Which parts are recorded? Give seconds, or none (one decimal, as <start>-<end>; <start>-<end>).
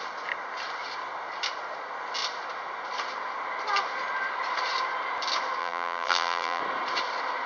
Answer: 0.0-5.6; 6.6-7.5